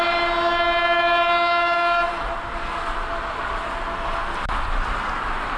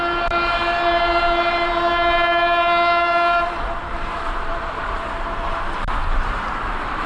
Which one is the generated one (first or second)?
second